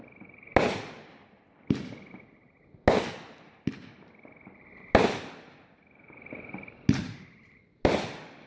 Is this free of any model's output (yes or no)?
yes